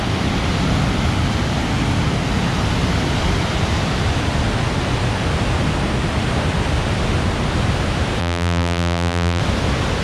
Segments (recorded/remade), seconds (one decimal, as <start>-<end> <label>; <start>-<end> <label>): 0.0-8.2 recorded; 8.2-9.4 remade; 9.4-10.0 recorded